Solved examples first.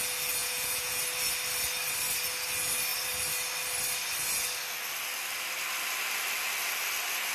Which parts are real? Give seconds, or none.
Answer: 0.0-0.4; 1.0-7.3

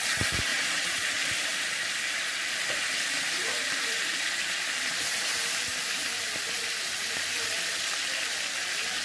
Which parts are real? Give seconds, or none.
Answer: 0.0-0.5; 1.3-9.0

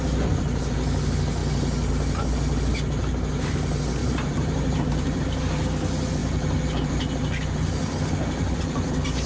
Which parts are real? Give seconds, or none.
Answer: 0.0-4.0; 5.4-9.3

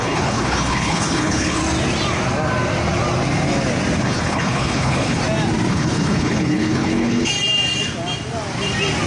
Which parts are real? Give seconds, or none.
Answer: 1.6-4.0; 5.2-5.7; 7.3-9.1

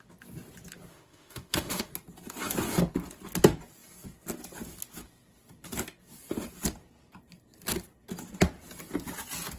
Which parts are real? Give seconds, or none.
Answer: 0.0-0.9; 1.9-9.6

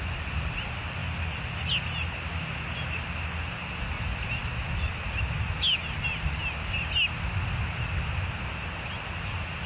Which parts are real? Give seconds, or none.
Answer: 0.0-9.7

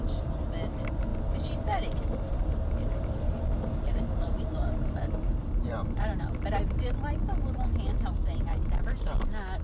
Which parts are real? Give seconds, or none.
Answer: 0.0-1.1; 6.2-9.6